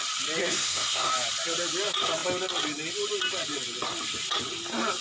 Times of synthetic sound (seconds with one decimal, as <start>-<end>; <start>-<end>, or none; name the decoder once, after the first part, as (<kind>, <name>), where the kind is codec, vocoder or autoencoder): 0.4-1.1 (codec, SNAC)